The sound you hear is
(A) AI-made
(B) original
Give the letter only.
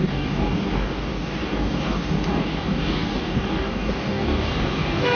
A